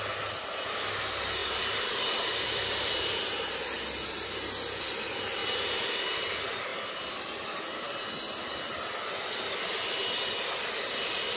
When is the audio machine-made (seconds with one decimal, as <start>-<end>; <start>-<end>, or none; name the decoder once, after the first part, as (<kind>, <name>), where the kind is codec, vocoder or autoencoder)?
1.4-2.9 (vocoder, BigVGAN v2); 5.4-6.0; 6.7-7.3